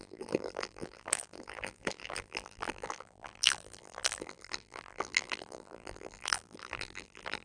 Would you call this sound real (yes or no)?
no